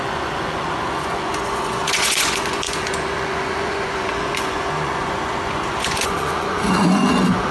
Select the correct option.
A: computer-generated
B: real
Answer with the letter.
A